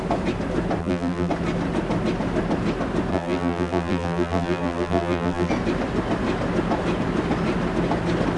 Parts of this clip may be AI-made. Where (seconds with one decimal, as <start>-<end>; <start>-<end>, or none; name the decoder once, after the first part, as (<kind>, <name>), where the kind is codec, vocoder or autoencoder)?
0.8-1.3 (vocoder, BigVGAN v2); 3.1-5.5

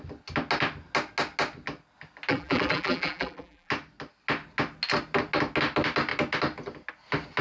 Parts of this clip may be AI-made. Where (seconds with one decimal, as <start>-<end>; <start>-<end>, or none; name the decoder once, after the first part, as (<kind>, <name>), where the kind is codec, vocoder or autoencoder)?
2.3-3.7 (vocoder, BigVGAN v2)

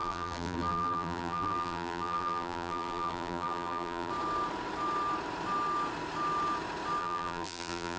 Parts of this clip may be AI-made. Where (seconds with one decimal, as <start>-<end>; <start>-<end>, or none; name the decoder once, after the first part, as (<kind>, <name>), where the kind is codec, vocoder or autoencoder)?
0.0-4.1 (vocoder, BigVGAN v2); 7.0-8.0

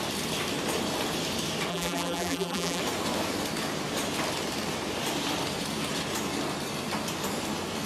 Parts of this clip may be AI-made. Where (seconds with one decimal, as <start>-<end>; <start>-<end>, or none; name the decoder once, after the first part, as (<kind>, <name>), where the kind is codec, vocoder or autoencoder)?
1.7-2.8 (vocoder, BigVGAN v2)

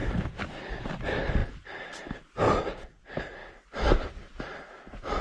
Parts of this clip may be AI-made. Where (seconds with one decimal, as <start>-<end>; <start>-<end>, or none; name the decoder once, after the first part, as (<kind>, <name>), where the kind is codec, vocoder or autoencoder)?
3.4-4.4 (vocoder, BigVGAN v2)

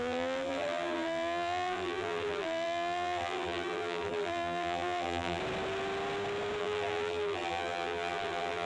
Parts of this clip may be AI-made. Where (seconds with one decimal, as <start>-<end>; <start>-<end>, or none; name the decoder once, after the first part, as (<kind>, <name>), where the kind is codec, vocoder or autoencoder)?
0.0-5.4 (vocoder, BigVGAN v2); 6.6-8.7